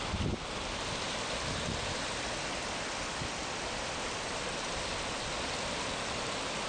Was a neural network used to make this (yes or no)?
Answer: no